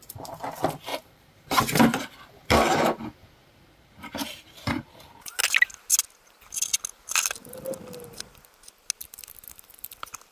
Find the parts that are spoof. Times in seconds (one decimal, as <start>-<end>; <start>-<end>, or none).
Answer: 0.9-1.6; 3.4-5.4